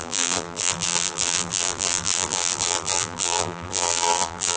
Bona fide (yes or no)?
no